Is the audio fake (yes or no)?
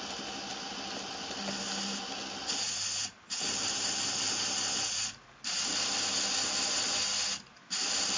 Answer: no